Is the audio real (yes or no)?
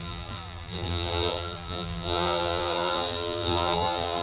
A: no